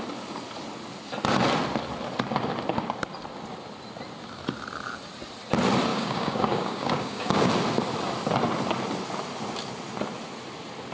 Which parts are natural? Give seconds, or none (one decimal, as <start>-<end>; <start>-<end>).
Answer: 0.0-5.9; 7.5-10.9